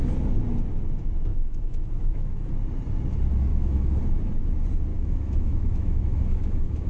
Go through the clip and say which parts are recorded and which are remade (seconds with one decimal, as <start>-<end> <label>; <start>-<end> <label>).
0.0-1.3 recorded; 1.3-2.5 remade; 2.5-3.5 recorded; 3.5-4.0 remade; 4.0-4.9 recorded; 4.9-6.9 remade